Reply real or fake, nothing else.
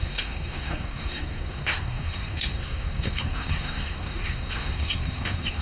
fake